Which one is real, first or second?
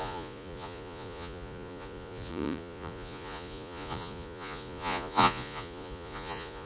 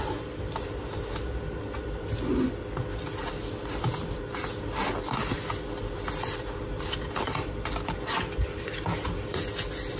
second